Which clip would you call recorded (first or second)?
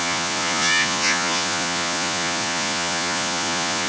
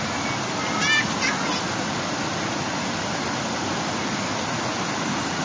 second